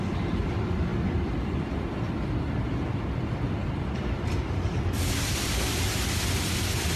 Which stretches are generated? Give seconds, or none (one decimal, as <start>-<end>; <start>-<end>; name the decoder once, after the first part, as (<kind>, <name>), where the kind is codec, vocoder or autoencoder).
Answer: 0.0-7.0 (vocoder, BigVGAN v2)